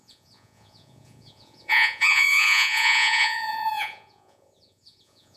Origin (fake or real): fake